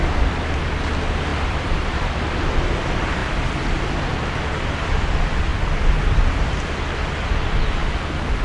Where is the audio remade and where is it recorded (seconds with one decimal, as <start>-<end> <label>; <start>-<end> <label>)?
0.0-1.3 recorded; 1.3-2.2 remade; 2.2-8.4 recorded